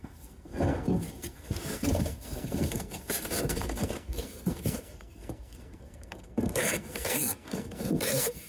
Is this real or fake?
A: fake